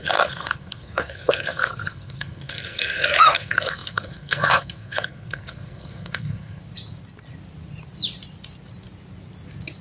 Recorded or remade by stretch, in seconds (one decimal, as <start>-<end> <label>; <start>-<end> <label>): 0.0-6.6 remade; 6.6-9.8 recorded